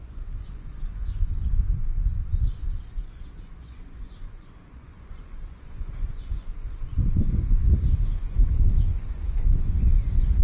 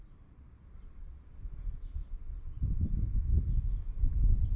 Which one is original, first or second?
second